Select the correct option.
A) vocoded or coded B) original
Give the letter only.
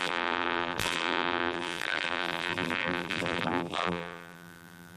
A